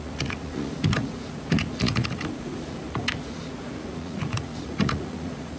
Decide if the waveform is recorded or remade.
remade